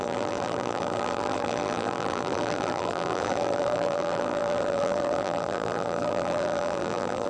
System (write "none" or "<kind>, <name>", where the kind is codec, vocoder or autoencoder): vocoder, BigVGAN v2